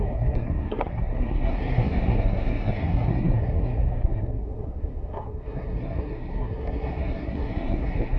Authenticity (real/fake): fake